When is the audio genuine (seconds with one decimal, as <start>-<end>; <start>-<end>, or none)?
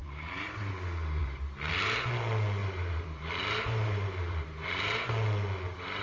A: 0.7-1.2; 1.7-2.6; 5.1-6.0